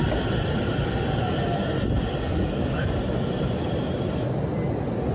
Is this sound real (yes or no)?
yes